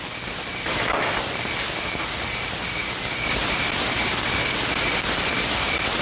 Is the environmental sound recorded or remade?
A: recorded